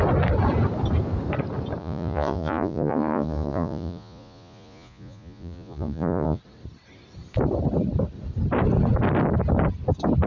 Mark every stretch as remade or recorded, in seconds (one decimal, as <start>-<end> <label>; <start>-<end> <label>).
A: 0.0-1.8 recorded; 1.8-6.4 remade; 6.4-10.3 recorded